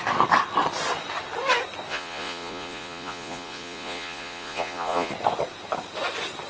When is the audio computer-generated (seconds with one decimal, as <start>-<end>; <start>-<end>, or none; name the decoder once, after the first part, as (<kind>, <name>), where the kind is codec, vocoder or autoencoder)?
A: 1.9-5.1 (vocoder, Vocos)